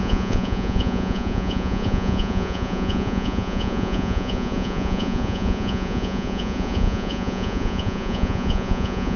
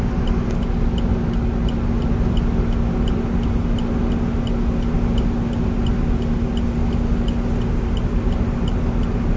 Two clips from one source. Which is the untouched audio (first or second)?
second